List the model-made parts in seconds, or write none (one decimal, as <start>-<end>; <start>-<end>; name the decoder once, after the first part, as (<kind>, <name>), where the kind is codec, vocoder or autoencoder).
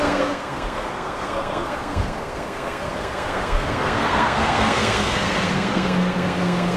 0.0-6.8 (codec, SNAC)